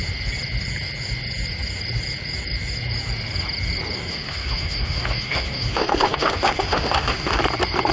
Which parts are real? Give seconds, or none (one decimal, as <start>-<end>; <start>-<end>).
0.0-4.1; 7.4-7.9